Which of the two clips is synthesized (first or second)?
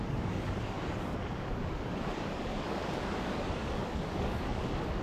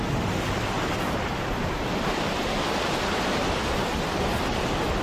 first